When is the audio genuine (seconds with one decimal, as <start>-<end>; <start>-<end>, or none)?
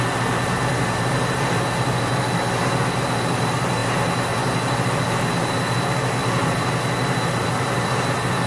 0.0-8.5